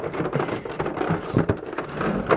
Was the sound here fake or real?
real